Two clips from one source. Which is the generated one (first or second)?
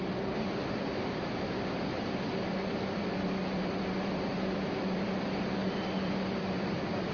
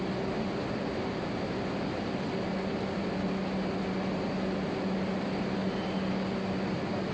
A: first